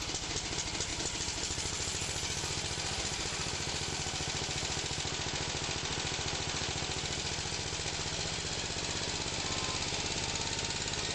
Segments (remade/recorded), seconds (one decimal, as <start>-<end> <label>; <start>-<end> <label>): 0.0-5.9 recorded; 5.9-6.8 remade; 6.8-11.1 recorded